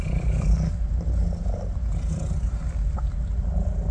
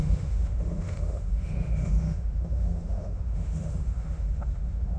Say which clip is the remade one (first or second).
second